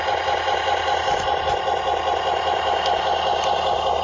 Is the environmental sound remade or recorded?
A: recorded